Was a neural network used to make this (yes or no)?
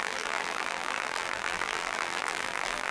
yes